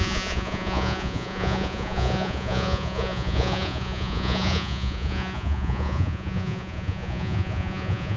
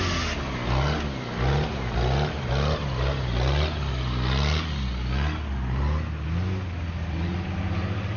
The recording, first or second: second